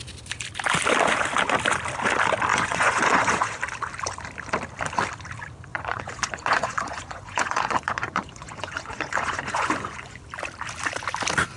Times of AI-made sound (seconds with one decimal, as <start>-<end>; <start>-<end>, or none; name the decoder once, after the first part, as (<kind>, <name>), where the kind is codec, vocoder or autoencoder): 2.5-3.6 (vocoder, Vocos); 5.7-10.2